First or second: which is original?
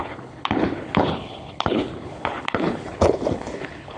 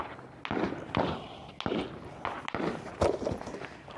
second